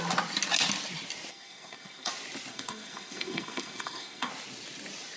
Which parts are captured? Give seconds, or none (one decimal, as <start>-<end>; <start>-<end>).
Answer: 0.0-1.3; 2.1-2.5; 4.3-5.2